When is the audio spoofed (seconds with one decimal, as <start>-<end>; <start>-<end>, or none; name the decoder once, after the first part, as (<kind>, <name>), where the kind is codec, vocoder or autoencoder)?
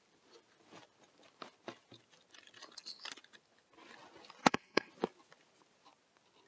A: 4.4-4.9 (codec, SNAC)